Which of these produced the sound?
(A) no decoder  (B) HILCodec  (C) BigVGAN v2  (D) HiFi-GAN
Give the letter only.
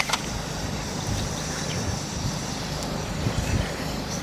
C